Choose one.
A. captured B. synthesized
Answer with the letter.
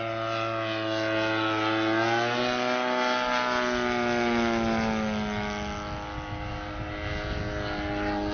A